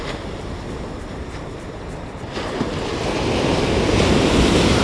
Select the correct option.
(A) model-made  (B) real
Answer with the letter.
B